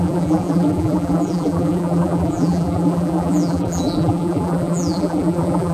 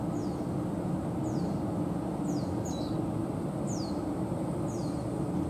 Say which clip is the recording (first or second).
second